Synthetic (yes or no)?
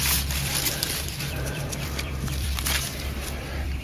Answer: yes